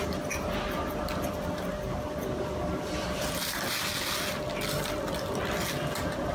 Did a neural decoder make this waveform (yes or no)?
no